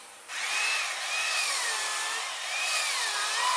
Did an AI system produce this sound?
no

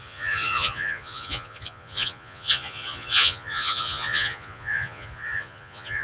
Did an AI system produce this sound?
yes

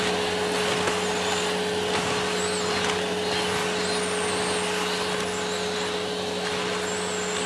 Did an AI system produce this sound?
no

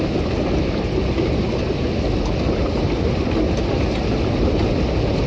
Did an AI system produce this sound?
no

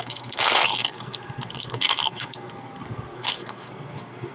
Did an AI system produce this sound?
yes